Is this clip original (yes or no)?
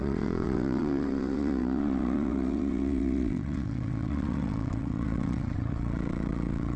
no